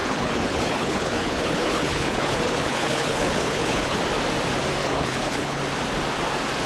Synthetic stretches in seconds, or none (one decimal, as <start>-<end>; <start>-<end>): 0.0-4.0; 4.8-5.6